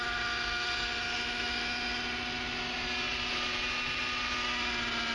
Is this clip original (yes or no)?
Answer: yes